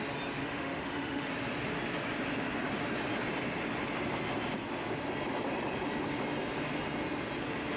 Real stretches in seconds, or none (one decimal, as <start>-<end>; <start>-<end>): 0.0-0.4; 1.3-7.8